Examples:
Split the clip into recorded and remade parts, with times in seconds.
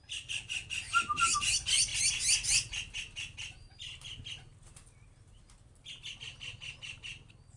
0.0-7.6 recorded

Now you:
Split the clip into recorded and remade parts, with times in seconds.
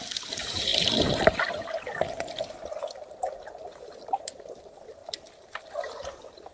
0.0-0.7 remade; 0.7-4.6 recorded; 4.6-5.0 remade; 5.0-5.6 recorded; 5.6-6.5 remade